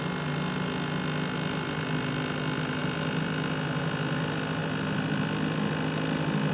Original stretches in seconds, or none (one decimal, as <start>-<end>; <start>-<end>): 0.0-6.5